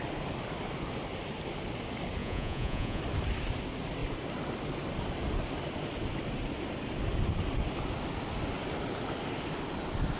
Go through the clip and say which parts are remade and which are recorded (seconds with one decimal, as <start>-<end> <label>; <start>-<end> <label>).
0.0-2.2 recorded; 2.2-3.0 remade; 3.0-10.2 recorded